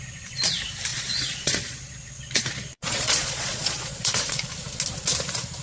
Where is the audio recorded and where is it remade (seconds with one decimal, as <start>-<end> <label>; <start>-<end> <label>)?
0.0-0.9 recorded; 0.9-4.3 remade; 4.3-5.6 recorded